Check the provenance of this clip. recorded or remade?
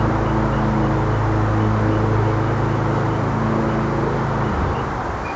recorded